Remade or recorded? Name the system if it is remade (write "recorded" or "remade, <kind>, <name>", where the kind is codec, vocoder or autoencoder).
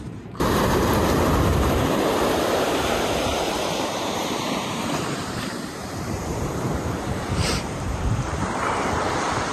remade, vocoder, BigVGAN v2